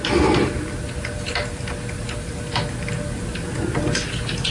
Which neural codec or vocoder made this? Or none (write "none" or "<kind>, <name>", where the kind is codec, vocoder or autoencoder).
none